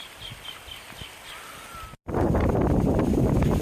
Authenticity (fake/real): real